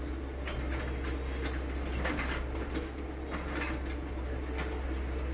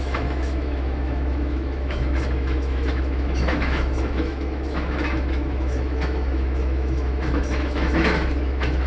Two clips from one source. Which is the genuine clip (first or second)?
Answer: first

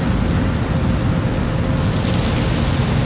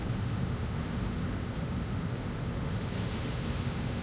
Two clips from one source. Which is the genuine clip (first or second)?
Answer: first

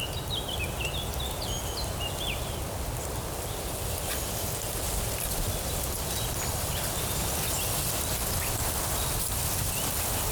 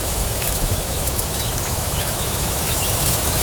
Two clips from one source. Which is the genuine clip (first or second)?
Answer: first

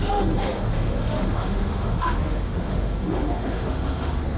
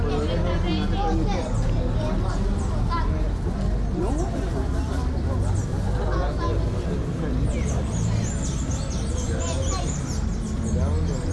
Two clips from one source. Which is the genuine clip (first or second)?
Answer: second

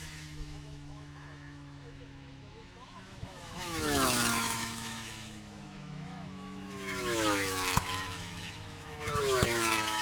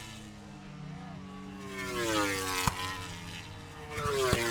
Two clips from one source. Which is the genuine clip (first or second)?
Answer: second